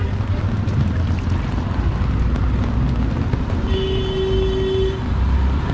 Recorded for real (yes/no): yes